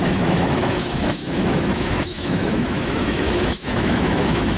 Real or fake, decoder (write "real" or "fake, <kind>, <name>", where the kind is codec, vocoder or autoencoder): fake, autoencoder, DAC-VAE